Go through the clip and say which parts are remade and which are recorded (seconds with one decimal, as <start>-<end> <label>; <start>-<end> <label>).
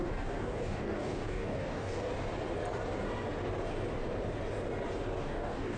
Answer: 0.0-2.1 remade; 2.1-5.2 recorded; 5.2-5.8 remade